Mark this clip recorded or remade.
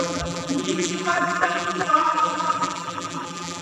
remade